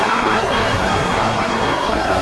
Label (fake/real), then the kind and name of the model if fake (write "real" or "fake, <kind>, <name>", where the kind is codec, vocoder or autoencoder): fake, codec, SNAC